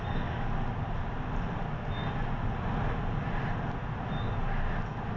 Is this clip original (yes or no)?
yes